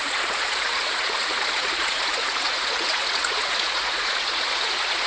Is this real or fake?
fake